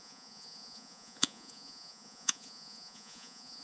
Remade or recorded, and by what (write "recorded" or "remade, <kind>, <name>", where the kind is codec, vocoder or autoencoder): remade, vocoder, Vocos